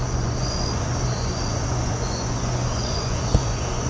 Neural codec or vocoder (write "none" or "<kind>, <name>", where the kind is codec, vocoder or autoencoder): vocoder, Vocos